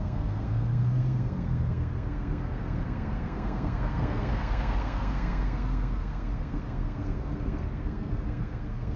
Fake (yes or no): yes